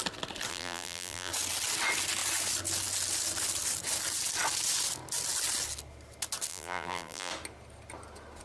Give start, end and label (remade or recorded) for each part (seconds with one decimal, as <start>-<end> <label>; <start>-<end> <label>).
0.0-0.5 recorded; 0.5-1.3 remade; 1.3-6.5 recorded; 6.5-7.3 remade; 7.3-8.4 recorded